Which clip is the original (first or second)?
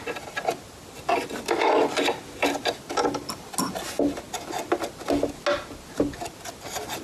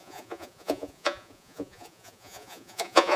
first